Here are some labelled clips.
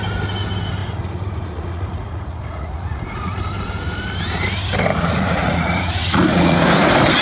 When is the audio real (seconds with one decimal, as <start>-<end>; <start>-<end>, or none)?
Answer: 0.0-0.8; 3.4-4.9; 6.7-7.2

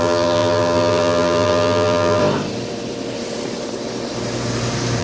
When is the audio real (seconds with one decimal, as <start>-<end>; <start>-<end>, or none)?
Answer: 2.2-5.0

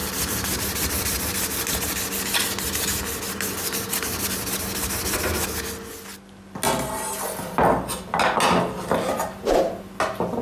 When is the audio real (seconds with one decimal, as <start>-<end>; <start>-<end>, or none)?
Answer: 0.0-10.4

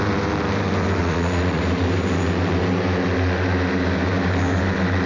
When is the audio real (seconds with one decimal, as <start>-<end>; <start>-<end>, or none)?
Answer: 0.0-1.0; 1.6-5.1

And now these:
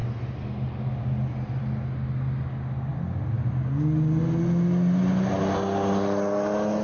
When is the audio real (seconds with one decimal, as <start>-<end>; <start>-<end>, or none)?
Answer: 0.0-6.8

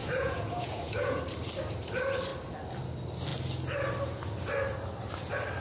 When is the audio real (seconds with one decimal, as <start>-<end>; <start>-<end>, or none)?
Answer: 1.2-5.6